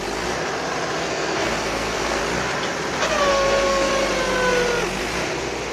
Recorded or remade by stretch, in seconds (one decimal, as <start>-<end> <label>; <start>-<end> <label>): 0.0-1.0 recorded; 1.0-2.2 remade; 2.2-3.3 recorded; 3.3-3.9 remade; 3.9-5.7 recorded